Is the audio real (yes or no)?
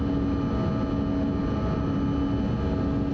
yes